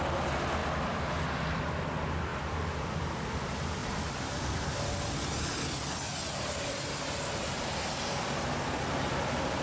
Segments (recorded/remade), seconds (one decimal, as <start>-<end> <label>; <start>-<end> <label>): 0.0-2.3 recorded; 2.3-3.4 remade; 3.4-9.6 recorded